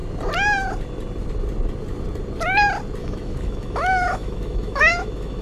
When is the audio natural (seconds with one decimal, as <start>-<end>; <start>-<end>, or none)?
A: 0.0-3.0